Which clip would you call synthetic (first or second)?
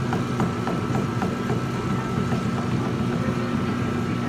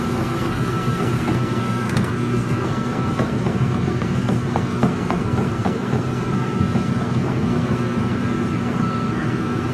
second